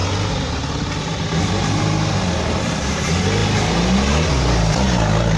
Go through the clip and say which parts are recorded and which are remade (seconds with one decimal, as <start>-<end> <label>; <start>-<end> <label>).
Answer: 0.0-5.4 recorded